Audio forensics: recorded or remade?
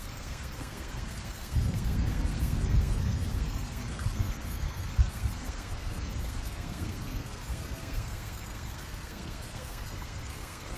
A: remade